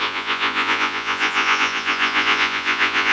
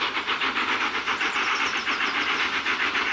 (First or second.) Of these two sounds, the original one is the second